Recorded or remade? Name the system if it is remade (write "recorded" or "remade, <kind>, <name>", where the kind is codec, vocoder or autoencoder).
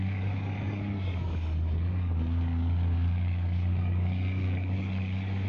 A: remade, codec, DAC